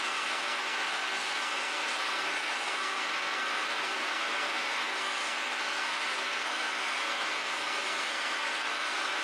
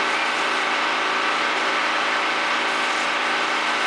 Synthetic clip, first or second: first